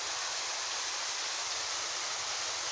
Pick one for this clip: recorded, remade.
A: recorded